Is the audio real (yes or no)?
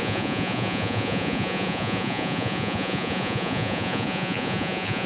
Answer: no